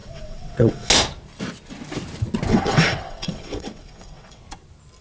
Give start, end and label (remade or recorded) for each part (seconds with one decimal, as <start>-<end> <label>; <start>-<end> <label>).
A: 0.0-0.9 remade; 0.9-2.5 recorded; 2.5-4.4 remade; 4.4-5.0 recorded